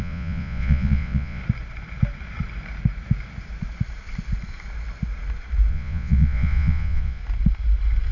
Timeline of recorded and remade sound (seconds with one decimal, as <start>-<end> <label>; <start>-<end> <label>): 0.0-1.4 remade; 1.4-5.7 recorded; 5.7-7.2 remade; 7.2-8.1 recorded